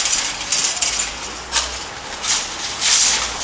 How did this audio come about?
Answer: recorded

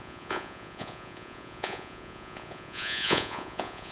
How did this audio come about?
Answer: remade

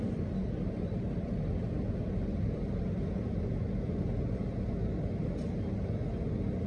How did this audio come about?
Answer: recorded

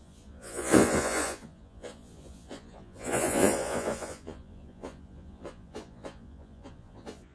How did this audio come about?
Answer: remade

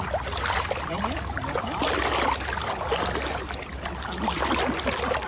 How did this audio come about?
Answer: recorded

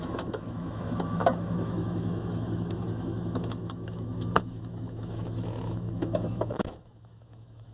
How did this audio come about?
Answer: remade